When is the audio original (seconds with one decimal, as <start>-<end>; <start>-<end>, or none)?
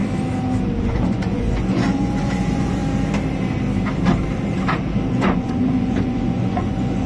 0.0-0.8; 2.8-5.1